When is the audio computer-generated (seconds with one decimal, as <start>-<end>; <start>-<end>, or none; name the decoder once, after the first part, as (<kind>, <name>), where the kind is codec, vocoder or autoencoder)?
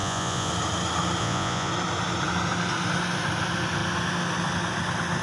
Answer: 0.0-0.5 (vocoder, Vocos); 1.2-1.7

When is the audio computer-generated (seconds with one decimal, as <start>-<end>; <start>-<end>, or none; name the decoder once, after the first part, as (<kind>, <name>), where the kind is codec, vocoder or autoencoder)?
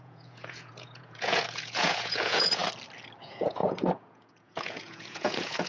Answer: 0.0-2.6 (vocoder, Vocos); 3.2-5.7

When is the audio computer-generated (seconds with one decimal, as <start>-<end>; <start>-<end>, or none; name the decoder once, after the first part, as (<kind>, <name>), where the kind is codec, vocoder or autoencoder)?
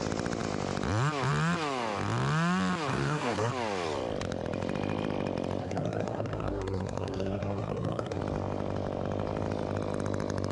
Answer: 2.9-3.5 (codec, SNAC); 5.6-8.2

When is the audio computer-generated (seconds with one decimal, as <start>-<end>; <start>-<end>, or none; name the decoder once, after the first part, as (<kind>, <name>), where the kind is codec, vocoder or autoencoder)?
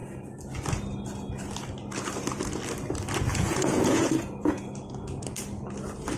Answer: 3.3-4.6 (vocoder, Vocos)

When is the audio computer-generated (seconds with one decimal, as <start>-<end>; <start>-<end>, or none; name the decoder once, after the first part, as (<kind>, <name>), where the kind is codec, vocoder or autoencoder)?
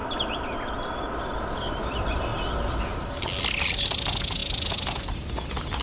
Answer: none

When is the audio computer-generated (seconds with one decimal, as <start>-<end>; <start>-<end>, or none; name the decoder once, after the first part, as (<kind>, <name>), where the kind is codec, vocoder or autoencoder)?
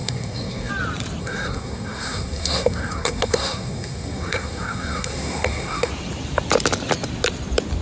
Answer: 0.0-0.7 (codec, SNAC); 1.2-5.9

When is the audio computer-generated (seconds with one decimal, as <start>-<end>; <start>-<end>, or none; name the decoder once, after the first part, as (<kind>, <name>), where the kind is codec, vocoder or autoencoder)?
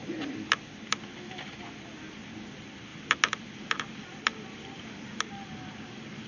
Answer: none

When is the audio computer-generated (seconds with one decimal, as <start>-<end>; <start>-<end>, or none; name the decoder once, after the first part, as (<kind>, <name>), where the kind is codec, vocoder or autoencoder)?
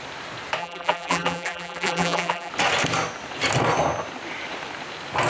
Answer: 0.6-2.5 (vocoder, BigVGAN v2)